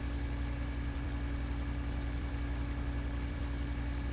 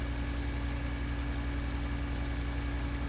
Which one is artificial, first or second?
first